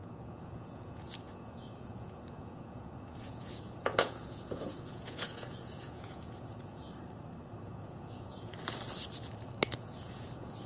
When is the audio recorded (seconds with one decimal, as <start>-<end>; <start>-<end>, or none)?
6.8-7.6; 8.5-9.7